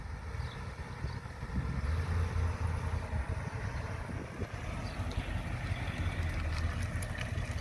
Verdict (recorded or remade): recorded